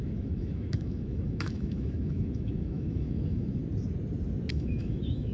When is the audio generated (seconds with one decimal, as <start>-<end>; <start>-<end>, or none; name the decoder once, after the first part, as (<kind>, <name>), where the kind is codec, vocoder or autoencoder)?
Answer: 0.0-3.6 (autoencoder, DAC-VAE); 4.5-5.3